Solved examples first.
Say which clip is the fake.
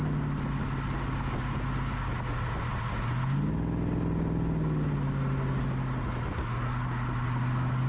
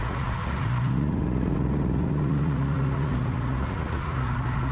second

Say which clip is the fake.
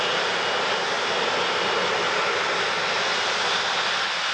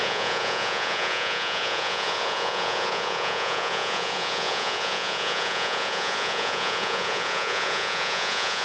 second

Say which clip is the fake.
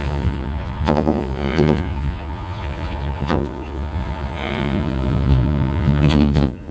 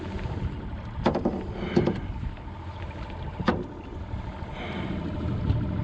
first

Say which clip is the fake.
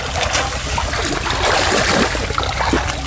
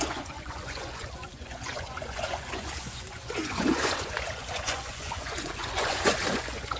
second